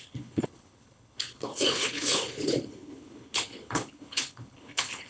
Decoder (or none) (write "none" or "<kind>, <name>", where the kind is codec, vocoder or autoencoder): codec, HILCodec